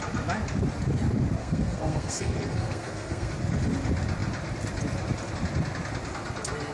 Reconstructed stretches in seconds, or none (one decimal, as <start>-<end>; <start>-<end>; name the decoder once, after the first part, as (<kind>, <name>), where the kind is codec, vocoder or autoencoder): 1.4-3.3 (codec, SNAC)